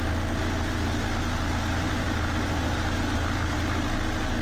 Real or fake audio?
real